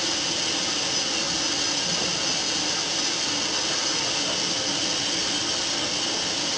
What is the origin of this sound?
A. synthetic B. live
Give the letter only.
B